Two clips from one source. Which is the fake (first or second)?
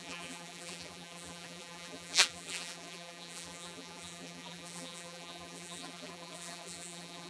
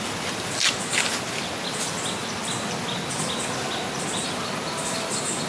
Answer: first